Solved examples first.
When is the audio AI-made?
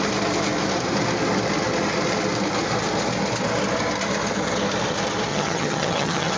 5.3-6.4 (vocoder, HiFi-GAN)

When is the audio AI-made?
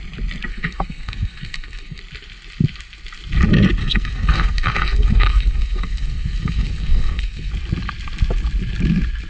0.5-2.0 (codec, SNAC); 3.8-7.5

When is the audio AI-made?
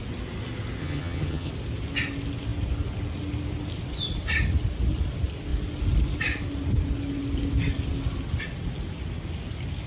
0.8-1.5 (vocoder, HiFi-GAN)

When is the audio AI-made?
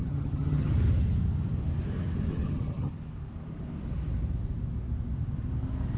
0.0-0.7 (vocoder, HiFi-GAN); 2.3-2.9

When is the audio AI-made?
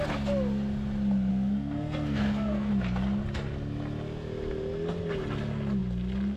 1.3-2.7 (codec, SNAC)